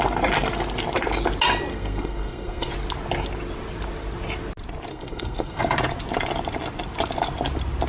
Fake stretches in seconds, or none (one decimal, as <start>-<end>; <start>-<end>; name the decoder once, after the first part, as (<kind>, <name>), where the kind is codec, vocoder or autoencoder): 1.7-2.7 (codec, SNAC); 4.9-5.6